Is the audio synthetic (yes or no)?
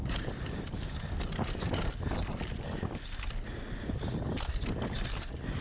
no